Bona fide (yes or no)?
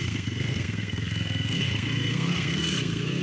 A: no